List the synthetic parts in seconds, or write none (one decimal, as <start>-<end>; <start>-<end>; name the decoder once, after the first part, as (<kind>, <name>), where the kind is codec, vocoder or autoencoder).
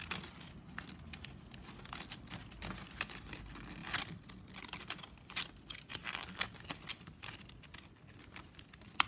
3.8-4.8 (vocoder, BigVGAN v2)